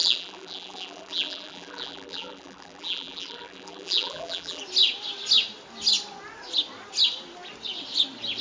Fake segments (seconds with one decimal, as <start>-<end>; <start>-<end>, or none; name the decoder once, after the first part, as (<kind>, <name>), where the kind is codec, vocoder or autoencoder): 0.0-4.6 (vocoder, BigVGAN v2)